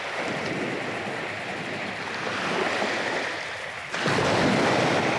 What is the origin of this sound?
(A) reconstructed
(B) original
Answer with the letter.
B